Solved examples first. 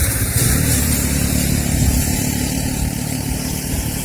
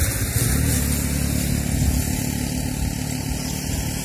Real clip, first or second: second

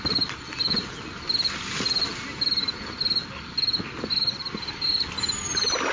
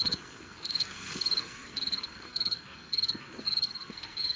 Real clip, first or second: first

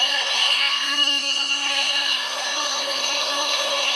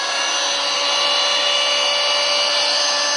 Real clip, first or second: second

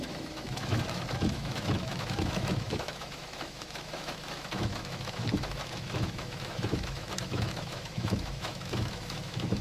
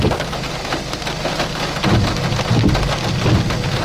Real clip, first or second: second